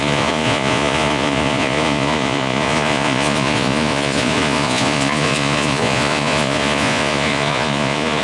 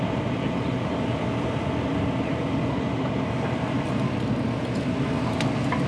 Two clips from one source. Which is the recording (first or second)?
second